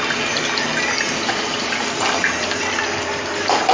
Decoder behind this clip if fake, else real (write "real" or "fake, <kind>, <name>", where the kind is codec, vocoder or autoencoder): real